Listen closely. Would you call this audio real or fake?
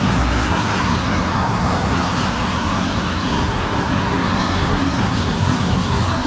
fake